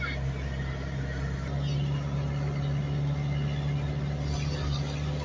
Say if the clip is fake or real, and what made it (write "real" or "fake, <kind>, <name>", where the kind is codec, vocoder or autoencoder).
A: real